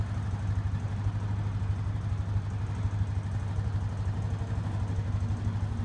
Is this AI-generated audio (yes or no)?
no